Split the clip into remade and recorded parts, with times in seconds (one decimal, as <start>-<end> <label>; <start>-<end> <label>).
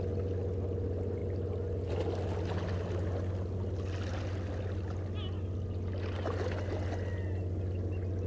0.0-8.3 recorded